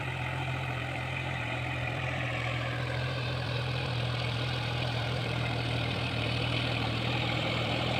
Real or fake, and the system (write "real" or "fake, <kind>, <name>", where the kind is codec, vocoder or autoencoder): fake, vocoder, BigVGAN v2